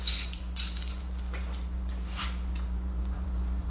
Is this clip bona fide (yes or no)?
no